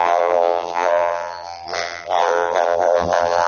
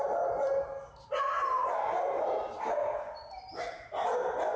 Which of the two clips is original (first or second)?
second